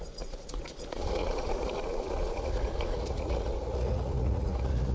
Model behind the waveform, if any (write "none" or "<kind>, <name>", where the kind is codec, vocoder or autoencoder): vocoder, Vocos